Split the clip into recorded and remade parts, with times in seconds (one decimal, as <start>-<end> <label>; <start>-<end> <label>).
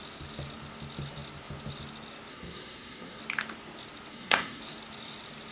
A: 0.0-2.3 recorded; 2.3-3.2 remade; 3.2-4.1 recorded; 4.1-4.6 remade; 4.6-5.5 recorded